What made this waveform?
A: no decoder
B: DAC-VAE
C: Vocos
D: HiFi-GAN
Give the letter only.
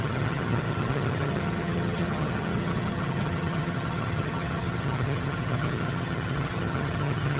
D